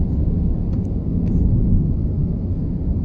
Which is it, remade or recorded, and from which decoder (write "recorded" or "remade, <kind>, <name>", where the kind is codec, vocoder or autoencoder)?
recorded